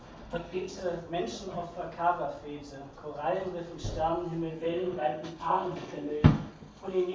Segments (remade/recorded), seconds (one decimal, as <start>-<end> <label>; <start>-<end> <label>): 0.0-0.8 remade; 0.8-4.5 recorded; 4.5-7.1 remade